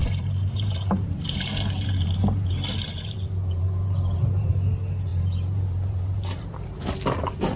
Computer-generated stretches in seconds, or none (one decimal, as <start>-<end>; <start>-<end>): 0.0-4.5; 5.1-6.8